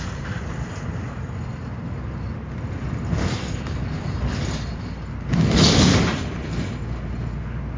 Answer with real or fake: real